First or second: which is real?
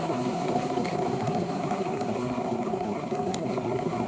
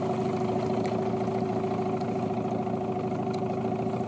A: second